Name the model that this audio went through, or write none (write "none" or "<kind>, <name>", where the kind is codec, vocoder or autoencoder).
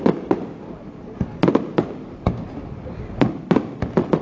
none